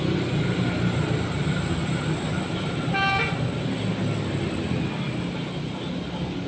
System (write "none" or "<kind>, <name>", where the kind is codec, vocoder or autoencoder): none